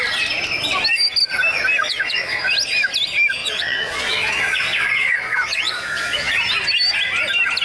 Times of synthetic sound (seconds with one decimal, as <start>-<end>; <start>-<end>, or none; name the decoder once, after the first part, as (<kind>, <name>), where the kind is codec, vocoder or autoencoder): 1.8-2.5 (vocoder, Vocos); 3.4-6.3